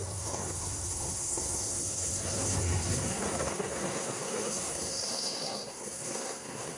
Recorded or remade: remade